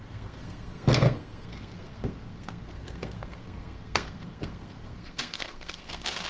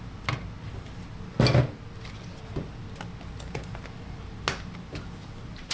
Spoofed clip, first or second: first